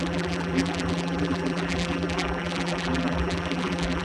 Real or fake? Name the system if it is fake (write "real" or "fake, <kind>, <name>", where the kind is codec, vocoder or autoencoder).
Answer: fake, vocoder, BigVGAN v2